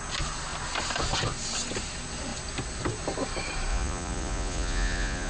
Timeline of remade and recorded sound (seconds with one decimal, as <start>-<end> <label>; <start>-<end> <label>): 0.0-3.7 recorded; 3.7-5.3 remade